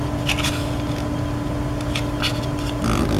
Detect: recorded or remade recorded